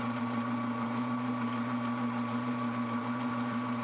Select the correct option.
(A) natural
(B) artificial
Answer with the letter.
B